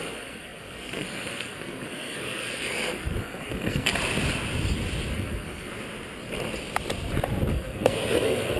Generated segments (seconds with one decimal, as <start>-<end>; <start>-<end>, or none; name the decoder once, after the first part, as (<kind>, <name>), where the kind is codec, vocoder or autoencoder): 0.0-3.9 (codec, SNAC); 5.1-5.7; 7.5-8.6